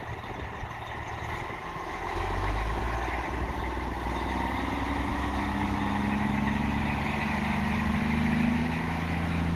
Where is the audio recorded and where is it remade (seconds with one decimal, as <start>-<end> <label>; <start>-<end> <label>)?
0.0-1.6 recorded; 1.6-2.8 remade; 2.8-5.1 recorded; 5.1-6.8 remade; 6.8-8.6 recorded; 8.6-9.6 remade